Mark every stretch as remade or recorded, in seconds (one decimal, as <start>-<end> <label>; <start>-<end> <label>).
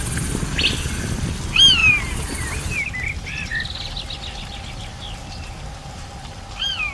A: 0.0-1.8 recorded; 1.8-2.7 remade; 2.7-5.8 recorded; 5.8-6.4 remade; 6.4-6.9 recorded